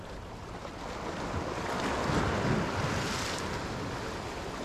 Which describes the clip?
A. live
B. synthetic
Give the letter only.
A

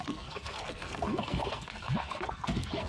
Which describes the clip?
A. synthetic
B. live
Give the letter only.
A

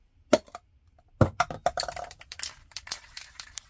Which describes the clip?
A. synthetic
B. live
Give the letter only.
B